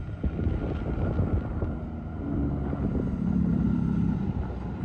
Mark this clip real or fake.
real